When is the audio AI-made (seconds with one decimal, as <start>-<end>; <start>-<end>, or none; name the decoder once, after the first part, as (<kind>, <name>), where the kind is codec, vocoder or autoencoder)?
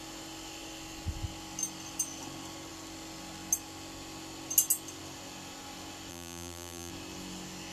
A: 6.1-6.9 (vocoder, BigVGAN v2)